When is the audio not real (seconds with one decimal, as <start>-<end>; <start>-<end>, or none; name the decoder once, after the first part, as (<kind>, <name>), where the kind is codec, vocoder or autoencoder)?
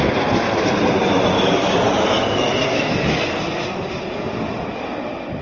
1.3-3.4 (codec, DAC)